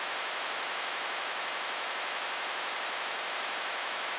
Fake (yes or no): yes